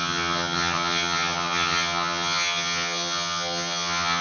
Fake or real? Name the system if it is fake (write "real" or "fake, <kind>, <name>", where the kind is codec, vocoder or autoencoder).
fake, vocoder, HiFi-GAN